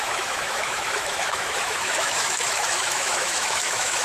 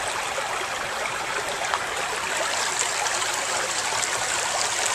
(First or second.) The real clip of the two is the second